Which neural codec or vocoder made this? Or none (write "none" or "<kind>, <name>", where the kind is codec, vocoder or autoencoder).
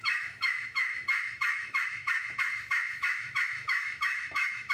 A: autoencoder, DAC-VAE